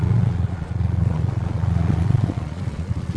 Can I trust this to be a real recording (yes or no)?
no